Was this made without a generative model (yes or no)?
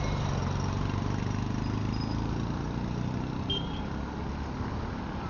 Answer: yes